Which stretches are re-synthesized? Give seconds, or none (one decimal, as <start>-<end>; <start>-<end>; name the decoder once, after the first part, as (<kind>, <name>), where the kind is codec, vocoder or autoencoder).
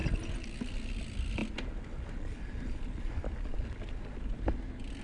none